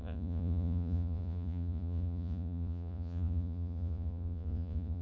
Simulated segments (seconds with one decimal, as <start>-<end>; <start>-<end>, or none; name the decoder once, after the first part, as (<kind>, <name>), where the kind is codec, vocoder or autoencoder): 0.0-5.0 (vocoder, Vocos)